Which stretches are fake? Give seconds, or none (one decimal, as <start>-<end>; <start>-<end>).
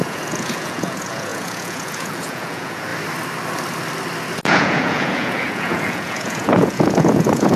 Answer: 0.0-2.9; 4.4-7.6